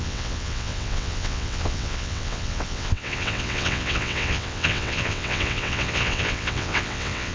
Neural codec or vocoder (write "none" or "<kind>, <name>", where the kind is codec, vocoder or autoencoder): vocoder, WaveNeXt